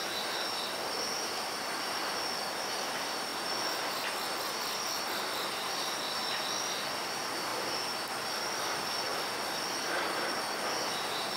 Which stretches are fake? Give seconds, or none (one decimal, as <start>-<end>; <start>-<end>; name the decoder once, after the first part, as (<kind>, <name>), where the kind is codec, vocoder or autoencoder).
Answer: 0.0-2.6 (vocoder, BigVGAN v2); 9.1-9.9